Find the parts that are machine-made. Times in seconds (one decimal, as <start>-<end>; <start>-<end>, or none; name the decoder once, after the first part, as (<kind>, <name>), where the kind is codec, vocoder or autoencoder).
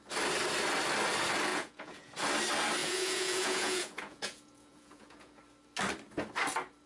1.5-2.1 (vocoder, Vocos); 2.8-5.4